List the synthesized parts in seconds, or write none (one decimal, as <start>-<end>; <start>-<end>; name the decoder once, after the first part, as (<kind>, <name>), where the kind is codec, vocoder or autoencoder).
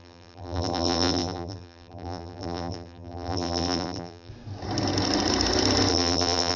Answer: 0.0-4.3 (vocoder, BigVGAN v2); 5.9-6.6